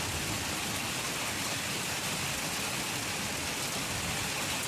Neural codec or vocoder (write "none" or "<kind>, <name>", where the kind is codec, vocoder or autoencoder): none